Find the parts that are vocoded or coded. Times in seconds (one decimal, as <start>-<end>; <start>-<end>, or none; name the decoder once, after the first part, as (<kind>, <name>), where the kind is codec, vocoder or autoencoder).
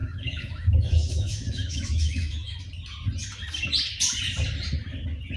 0.0-2.6 (autoencoder, DAC-VAE)